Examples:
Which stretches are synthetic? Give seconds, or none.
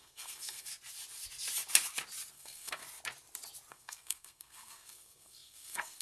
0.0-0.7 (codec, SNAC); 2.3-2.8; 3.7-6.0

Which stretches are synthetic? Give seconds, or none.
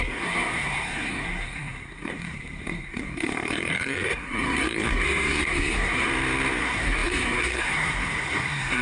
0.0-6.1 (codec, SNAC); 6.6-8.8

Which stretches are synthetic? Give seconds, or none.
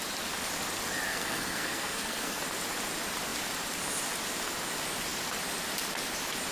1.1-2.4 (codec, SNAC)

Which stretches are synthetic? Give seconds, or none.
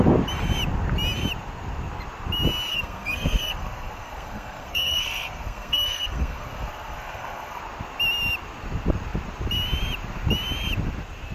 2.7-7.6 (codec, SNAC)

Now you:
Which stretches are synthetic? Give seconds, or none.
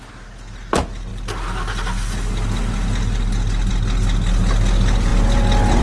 none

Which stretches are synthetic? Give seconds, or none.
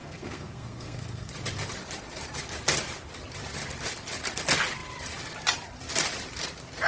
0.0-1.3 (codec, SNAC)